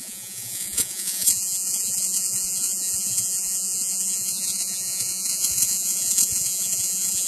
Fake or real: fake